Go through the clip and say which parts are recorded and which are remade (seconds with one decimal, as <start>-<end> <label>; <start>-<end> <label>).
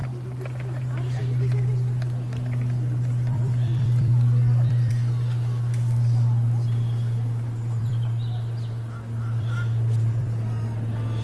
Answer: 0.0-11.2 remade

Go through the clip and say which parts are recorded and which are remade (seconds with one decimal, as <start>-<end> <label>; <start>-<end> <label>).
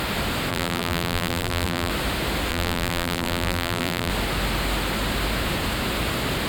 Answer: 0.0-0.5 recorded; 0.5-1.9 remade; 1.9-2.5 recorded; 2.5-4.1 remade; 4.1-6.5 recorded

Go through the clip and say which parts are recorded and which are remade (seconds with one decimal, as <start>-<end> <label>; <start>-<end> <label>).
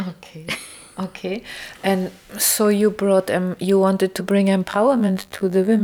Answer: 0.0-4.7 recorded; 4.7-5.8 remade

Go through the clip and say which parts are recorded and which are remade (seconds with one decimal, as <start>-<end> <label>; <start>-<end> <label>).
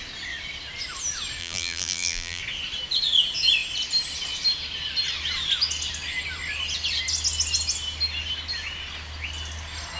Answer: 0.0-1.4 recorded; 1.4-2.4 remade; 2.4-10.0 recorded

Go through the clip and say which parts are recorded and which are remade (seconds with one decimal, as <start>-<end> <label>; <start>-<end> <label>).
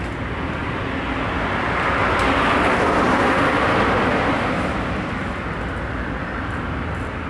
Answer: 0.0-7.3 recorded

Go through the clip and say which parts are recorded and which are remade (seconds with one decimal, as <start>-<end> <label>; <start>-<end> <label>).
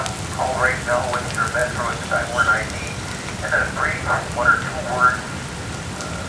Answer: 0.0-1.6 recorded; 1.6-5.4 remade; 5.4-6.3 recorded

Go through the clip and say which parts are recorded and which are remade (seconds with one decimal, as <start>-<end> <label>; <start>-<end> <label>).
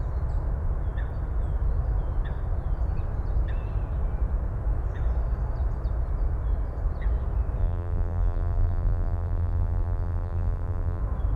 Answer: 0.0-7.6 recorded; 7.6-11.0 remade; 11.0-11.4 recorded